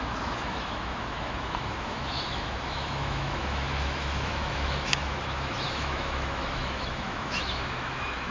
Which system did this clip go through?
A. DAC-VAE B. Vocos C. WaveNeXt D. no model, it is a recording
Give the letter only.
A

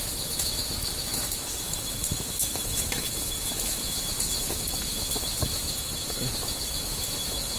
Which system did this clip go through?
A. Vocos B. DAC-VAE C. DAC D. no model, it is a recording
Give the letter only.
B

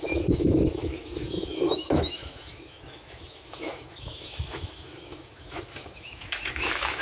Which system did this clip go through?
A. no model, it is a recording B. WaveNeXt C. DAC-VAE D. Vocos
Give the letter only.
C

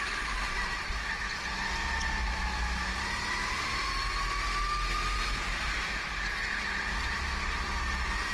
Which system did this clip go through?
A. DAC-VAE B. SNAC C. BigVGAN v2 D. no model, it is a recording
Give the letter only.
D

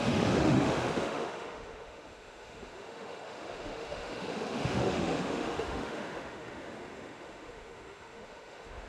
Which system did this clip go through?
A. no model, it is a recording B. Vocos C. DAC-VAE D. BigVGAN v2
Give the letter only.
C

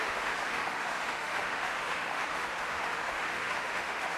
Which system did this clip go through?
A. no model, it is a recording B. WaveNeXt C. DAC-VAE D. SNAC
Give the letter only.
C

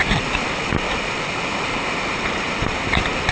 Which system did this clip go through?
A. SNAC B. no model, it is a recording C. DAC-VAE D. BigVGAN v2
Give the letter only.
B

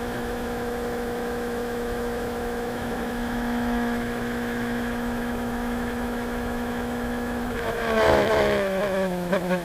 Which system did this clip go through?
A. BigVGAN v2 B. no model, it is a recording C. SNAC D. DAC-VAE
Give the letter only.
D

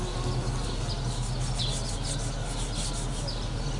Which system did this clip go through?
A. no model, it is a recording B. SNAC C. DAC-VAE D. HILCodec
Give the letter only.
A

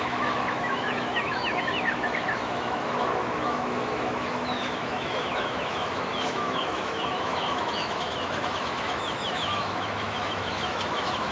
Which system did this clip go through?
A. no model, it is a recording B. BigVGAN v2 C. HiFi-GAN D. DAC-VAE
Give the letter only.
D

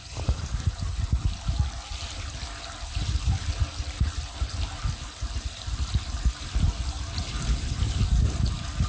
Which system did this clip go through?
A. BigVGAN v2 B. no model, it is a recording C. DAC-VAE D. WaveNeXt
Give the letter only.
B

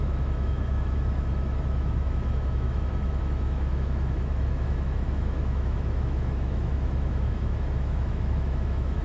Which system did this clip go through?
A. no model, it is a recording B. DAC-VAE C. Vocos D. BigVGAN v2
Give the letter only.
B